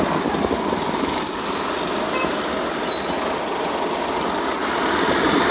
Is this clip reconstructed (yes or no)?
no